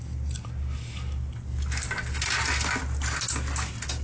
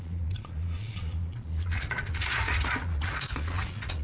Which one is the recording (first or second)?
first